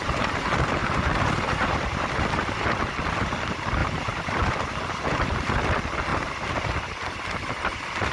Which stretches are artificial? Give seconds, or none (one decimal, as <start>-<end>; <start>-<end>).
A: 0.8-2.8; 3.8-4.4; 6.1-6.7